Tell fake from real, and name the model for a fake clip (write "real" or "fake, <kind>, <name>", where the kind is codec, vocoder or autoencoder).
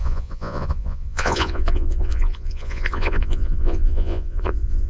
fake, vocoder, Vocos